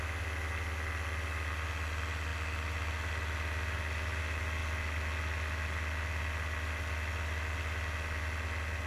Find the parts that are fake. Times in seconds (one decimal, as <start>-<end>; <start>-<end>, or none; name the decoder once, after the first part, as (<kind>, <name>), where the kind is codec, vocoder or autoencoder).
none